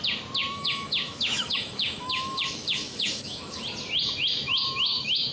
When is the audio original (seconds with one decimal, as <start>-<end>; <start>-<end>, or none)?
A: 0.0-0.4; 3.6-4.4